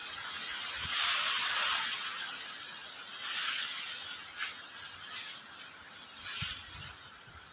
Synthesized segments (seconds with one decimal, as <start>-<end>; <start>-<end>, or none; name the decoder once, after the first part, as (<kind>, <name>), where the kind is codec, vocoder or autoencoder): none